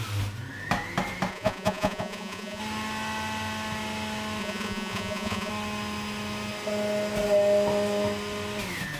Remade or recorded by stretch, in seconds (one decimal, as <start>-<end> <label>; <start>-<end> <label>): 0.0-1.3 recorded; 1.3-2.6 remade; 2.6-4.4 recorded; 4.4-5.5 remade; 5.5-9.0 recorded